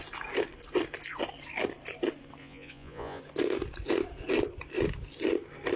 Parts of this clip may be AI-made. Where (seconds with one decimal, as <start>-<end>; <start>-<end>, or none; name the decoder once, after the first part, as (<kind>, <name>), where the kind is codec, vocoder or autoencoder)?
2.4-3.2 (vocoder, Vocos)